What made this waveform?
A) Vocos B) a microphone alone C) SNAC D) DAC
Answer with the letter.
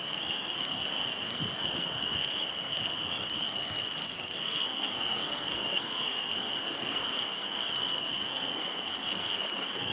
C